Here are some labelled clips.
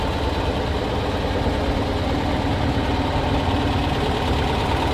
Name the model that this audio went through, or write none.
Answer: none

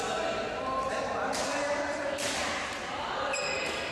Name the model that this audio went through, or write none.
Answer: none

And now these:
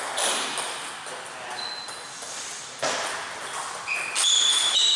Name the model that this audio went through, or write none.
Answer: none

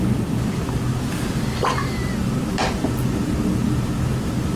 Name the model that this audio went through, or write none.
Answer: none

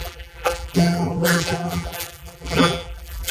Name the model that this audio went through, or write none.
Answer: vocoder, BigVGAN v2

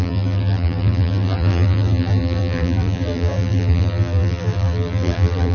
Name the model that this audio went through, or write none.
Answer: vocoder, BigVGAN v2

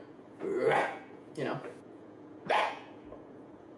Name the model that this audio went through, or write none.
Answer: vocoder, Vocos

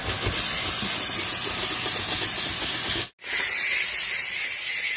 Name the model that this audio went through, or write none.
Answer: none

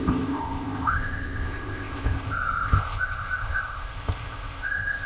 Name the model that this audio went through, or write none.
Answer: codec, ZipCodec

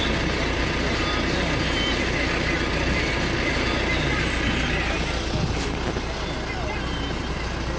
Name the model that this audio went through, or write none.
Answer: none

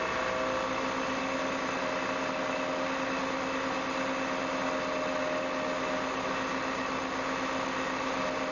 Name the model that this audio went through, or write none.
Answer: none